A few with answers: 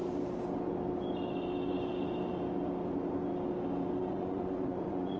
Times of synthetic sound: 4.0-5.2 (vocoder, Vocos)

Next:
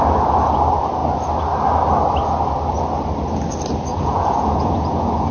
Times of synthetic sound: 3.9-5.3 (vocoder, Vocos)

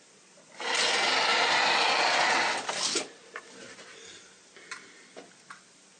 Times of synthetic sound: none

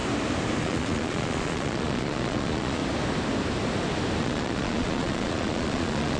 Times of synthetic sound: 0.6-2.8 (vocoder, Vocos); 4.2-6.2

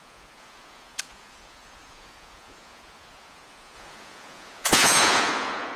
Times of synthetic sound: 0.0-5.8 (vocoder, Vocos)

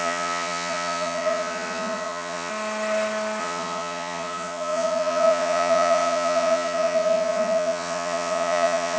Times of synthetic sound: 0.0-2.5 (vocoder, Vocos); 3.4-9.0

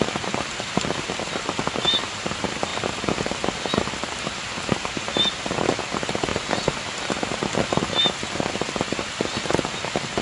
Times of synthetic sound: none

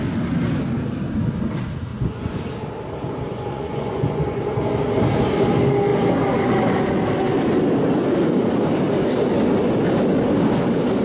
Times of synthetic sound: 1.9-2.4 (vocoder, Vocos); 3.3-4.4